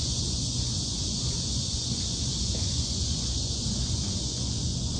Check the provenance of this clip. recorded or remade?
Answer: remade